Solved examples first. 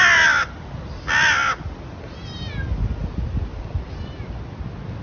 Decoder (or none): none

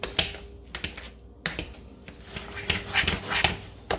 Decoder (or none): none